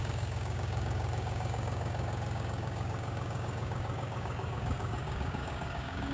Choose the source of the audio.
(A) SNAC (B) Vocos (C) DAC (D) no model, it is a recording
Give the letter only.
C